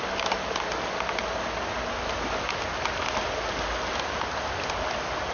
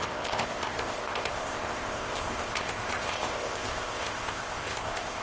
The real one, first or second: first